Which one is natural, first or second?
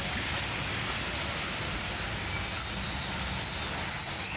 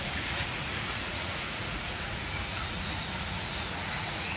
first